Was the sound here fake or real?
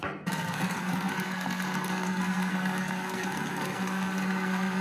fake